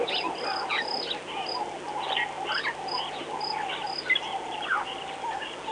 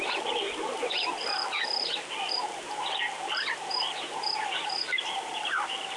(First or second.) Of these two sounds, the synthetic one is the second